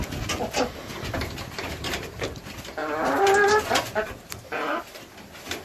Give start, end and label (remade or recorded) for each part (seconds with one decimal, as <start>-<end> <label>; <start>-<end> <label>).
0.0-5.6 recorded